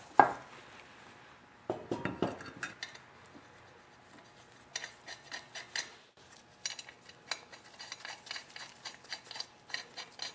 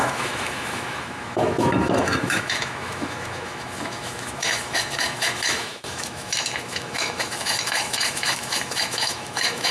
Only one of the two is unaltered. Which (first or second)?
first